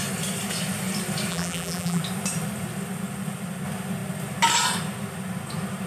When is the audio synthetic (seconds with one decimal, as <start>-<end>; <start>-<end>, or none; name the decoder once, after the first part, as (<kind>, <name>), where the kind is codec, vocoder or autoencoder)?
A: 1.3-2.0 (vocoder, BigVGAN v2)